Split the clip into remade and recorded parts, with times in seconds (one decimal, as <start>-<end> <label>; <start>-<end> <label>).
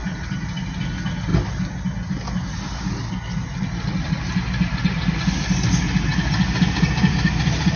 0.0-7.8 recorded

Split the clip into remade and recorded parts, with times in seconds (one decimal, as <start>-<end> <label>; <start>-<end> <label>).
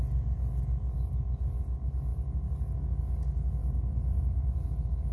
0.0-5.1 recorded